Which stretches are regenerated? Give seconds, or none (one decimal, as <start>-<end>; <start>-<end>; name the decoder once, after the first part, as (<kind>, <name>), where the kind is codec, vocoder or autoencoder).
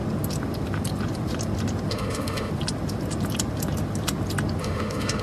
1.9-2.5 (autoencoder, DAC-VAE); 4.6-5.2